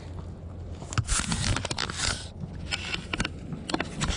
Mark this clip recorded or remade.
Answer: recorded